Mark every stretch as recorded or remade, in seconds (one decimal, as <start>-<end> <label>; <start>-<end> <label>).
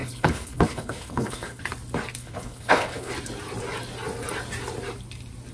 0.0-1.6 remade; 1.6-2.2 recorded; 2.2-3.1 remade; 3.1-5.5 recorded